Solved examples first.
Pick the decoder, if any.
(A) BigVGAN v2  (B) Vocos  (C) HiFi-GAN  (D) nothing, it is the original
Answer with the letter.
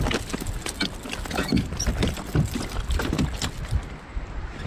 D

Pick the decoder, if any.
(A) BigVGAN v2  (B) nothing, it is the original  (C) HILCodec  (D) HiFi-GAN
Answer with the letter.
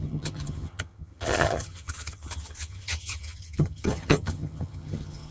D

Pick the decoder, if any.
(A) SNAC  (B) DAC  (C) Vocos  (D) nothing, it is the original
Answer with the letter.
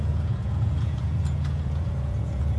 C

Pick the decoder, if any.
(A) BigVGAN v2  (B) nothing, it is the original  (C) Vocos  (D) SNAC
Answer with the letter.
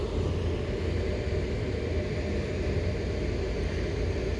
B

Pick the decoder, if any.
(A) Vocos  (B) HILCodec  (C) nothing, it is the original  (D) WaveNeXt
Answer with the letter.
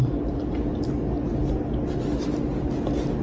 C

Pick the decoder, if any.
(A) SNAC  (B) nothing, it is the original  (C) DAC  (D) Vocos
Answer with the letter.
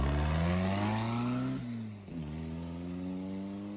B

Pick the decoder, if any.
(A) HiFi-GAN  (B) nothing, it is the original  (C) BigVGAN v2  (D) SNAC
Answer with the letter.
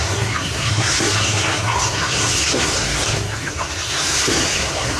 D